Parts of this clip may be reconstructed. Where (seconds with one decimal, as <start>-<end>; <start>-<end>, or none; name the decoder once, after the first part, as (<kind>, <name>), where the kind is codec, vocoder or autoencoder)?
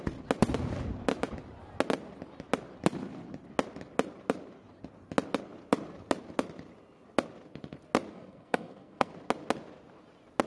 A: 8.1-9.1 (codec, SNAC)